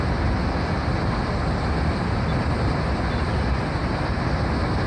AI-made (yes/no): no